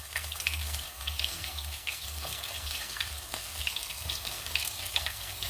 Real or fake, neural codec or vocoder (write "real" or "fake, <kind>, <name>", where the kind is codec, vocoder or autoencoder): fake, codec, SNAC